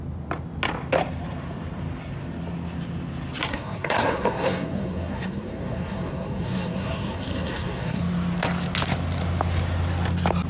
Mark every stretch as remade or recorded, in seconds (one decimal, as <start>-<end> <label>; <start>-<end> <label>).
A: 0.0-3.5 recorded; 3.5-8.0 remade; 8.0-10.5 recorded